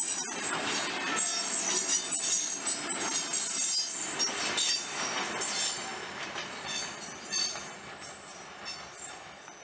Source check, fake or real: real